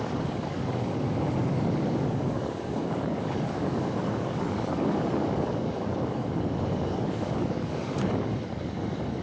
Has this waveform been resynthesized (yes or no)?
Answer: yes